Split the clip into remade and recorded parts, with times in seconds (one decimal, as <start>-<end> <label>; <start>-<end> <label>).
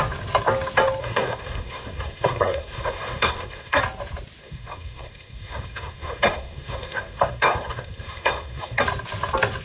0.0-1.0 recorded; 1.0-3.8 remade; 3.8-4.4 recorded; 4.4-8.8 remade; 8.8-9.6 recorded